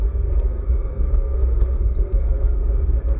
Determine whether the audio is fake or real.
fake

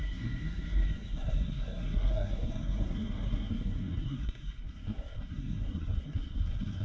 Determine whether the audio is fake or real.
fake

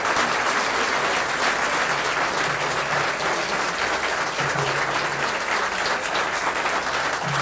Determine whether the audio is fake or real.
real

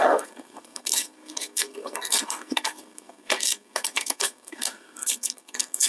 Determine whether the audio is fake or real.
fake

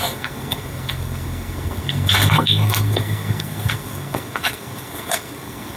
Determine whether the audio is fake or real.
fake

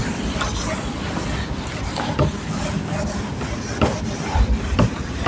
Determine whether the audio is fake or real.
real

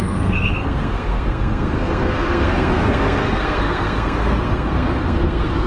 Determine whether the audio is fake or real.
fake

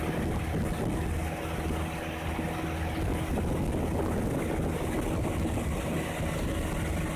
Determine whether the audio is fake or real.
real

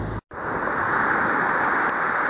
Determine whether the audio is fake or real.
real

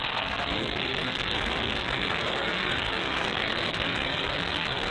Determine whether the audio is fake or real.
fake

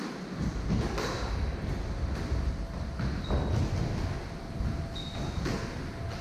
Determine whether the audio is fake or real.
real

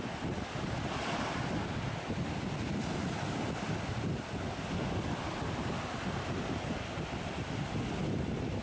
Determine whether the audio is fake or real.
real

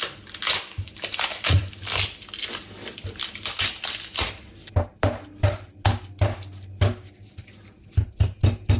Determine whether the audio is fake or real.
real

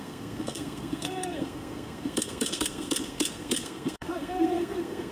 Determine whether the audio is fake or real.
fake